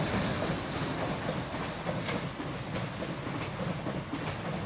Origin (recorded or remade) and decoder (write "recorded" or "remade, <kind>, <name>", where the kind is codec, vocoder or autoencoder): recorded